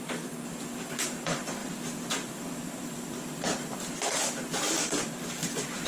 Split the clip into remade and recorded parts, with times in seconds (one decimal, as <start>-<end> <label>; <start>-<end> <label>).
0.0-1.6 recorded; 1.6-5.1 remade; 5.1-5.9 recorded

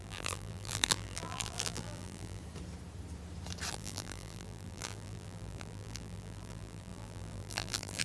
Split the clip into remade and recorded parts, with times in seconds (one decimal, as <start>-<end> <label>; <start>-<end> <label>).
0.0-2.4 remade; 2.4-3.7 recorded; 3.7-8.0 remade

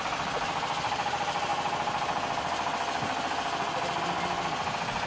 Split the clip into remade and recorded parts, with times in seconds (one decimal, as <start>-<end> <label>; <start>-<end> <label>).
0.0-5.1 recorded